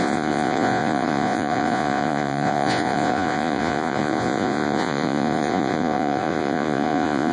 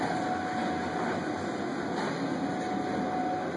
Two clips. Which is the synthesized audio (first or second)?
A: first